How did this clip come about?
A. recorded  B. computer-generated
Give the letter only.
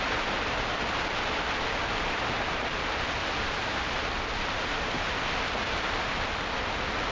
A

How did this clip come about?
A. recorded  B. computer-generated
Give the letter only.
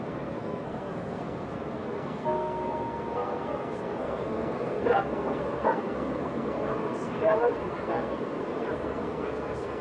B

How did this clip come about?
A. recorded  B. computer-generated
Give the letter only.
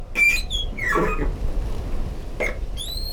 A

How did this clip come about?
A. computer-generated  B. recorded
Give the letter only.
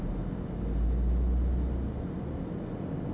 B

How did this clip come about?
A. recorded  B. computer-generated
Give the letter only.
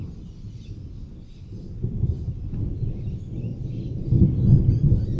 A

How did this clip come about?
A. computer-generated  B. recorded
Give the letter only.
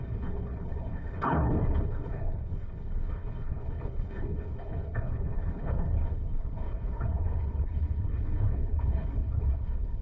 A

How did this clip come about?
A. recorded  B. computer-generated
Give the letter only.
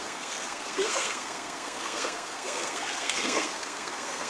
B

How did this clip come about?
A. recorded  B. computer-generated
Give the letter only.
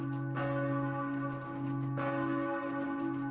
A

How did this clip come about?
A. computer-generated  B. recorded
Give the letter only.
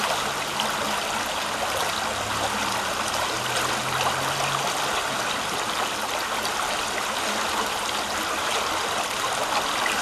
B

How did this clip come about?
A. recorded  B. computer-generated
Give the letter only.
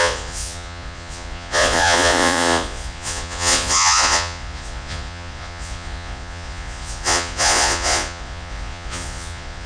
B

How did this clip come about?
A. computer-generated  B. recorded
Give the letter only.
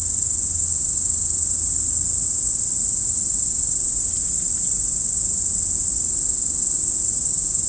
B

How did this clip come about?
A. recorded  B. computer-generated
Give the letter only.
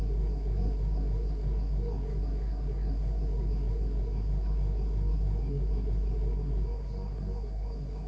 B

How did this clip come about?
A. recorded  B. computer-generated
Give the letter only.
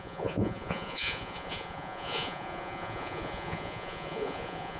B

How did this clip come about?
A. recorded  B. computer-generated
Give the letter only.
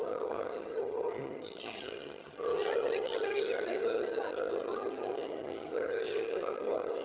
B